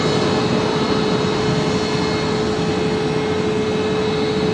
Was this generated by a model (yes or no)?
no